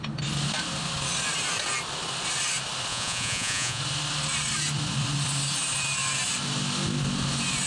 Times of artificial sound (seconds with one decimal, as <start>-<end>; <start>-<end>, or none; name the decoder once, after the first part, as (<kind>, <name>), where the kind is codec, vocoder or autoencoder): 2.9-3.8 (vocoder, Vocos)